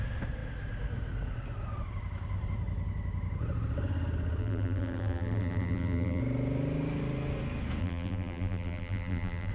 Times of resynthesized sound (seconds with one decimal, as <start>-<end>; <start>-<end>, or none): 4.4-6.2; 7.8-9.5